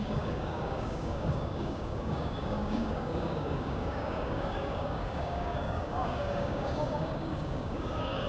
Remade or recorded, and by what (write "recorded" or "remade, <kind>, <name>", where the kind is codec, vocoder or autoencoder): remade, codec, DAC